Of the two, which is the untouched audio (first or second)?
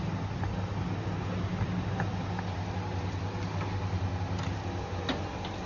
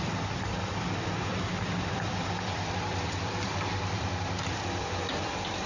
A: first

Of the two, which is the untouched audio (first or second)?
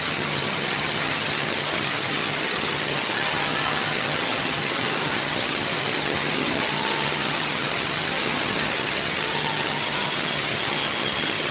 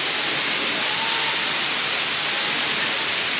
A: second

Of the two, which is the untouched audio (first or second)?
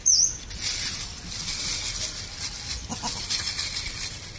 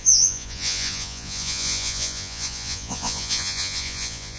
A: first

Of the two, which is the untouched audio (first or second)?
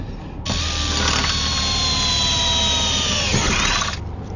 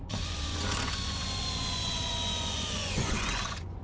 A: first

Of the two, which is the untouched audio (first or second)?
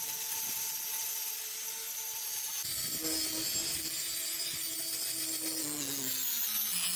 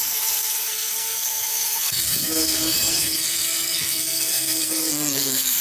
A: first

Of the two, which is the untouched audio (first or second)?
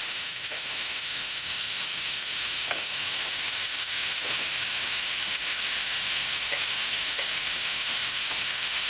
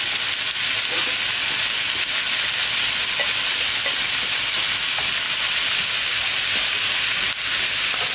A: second